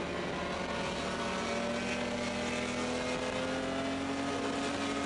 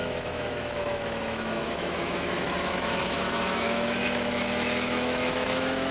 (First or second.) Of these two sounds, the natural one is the first